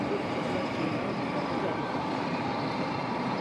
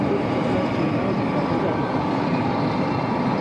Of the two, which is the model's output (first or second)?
first